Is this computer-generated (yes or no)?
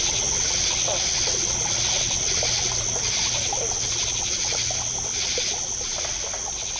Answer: no